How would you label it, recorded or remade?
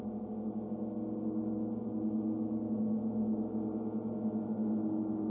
recorded